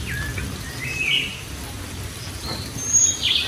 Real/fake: real